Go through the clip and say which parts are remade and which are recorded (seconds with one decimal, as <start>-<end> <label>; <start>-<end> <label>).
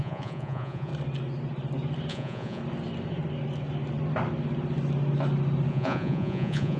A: 0.0-0.9 remade; 0.9-2.1 recorded; 2.1-2.6 remade; 2.6-5.7 recorded; 5.7-6.8 remade